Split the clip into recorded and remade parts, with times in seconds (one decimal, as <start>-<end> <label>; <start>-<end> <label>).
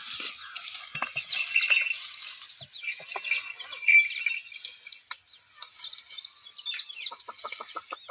0.0-8.1 recorded